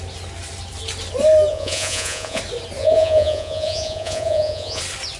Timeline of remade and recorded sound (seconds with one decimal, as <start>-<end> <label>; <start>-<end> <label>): 0.0-1.5 recorded; 1.5-2.4 remade; 2.4-2.8 recorded; 2.8-4.8 remade; 4.8-5.2 recorded

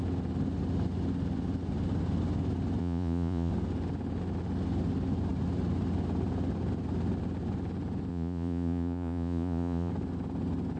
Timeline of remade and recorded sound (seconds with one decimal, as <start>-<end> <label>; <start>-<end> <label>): 0.0-2.8 recorded; 2.8-3.5 remade; 3.5-8.1 recorded; 8.1-9.9 remade; 9.9-10.8 recorded

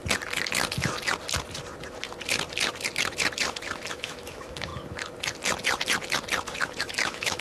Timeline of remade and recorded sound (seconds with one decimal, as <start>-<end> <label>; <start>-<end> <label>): 0.0-3.9 recorded; 3.9-4.7 remade; 4.7-6.8 recorded; 6.8-7.4 remade

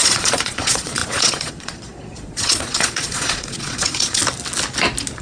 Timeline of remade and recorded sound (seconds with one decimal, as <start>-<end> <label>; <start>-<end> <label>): 0.0-4.2 remade; 4.2-5.2 recorded

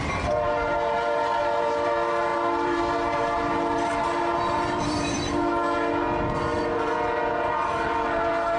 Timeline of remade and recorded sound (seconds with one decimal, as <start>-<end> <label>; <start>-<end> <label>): 0.0-8.6 remade

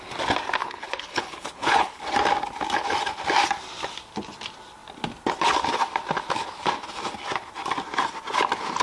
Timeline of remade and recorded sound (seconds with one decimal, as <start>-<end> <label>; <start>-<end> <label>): 0.0-0.6 recorded; 0.6-2.0 remade; 2.0-8.8 recorded

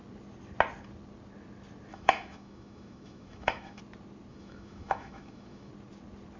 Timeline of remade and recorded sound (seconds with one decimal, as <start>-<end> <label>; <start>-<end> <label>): 0.0-1.9 recorded; 1.9-3.8 remade; 3.8-4.3 recorded; 4.3-5.7 remade; 5.7-6.4 recorded

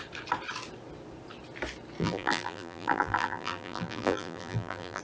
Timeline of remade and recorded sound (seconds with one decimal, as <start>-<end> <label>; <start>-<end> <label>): 0.0-2.0 recorded; 2.0-5.0 remade